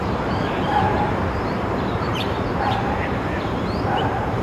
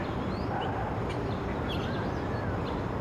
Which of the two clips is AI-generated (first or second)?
first